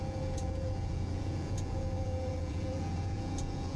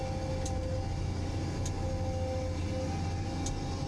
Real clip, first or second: second